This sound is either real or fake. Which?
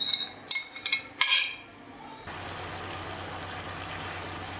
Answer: real